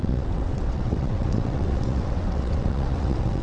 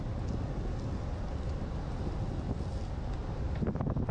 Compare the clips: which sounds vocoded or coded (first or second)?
first